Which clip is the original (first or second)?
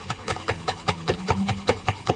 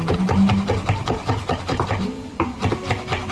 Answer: second